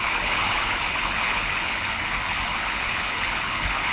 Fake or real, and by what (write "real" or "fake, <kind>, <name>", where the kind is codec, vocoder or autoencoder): fake, codec, HILCodec